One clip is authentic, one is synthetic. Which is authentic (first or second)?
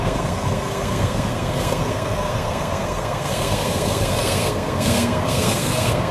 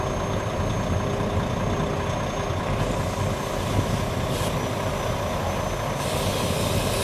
second